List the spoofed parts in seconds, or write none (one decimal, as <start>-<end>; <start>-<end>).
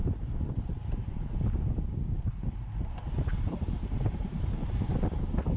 none